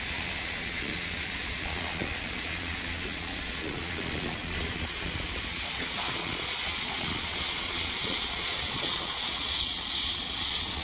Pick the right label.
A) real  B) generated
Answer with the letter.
B